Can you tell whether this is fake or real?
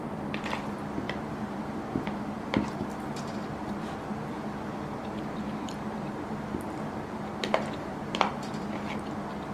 fake